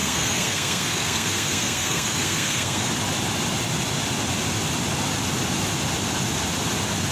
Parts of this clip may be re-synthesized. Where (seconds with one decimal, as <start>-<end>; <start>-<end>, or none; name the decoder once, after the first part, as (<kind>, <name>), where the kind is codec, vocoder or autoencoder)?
0.0-2.9 (codec, SNAC)